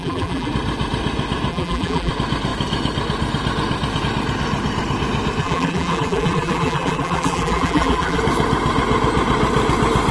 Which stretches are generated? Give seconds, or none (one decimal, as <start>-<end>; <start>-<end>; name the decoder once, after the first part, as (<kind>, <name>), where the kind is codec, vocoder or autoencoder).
0.0-0.5 (vocoder, BigVGAN v2); 1.5-2.1; 5.4-8.2